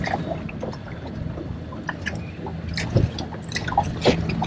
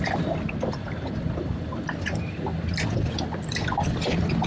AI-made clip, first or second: second